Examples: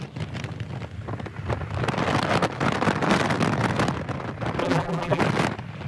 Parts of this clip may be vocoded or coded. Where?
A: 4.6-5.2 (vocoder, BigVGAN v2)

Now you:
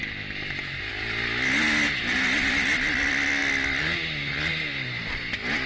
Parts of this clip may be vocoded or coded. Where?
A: none

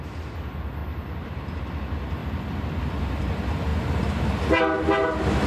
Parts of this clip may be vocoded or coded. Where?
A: 0.8-1.4 (vocoder, BigVGAN v2)

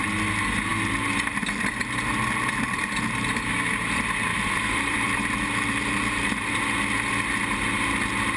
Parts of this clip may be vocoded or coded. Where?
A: 4.3-6.6 (vocoder, BigVGAN v2)